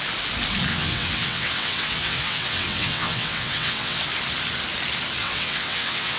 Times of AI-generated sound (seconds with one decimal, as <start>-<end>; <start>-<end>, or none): 0.7-4.0; 5.2-6.2